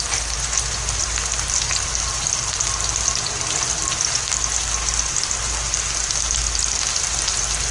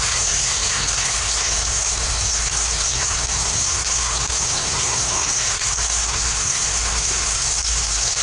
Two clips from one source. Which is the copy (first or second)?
second